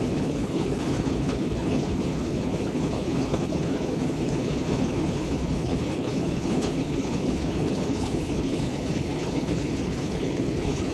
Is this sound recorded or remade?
remade